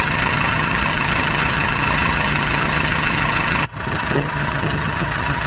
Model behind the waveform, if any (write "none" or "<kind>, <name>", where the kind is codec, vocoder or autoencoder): vocoder, HiFi-GAN